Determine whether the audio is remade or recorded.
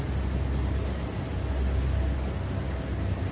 recorded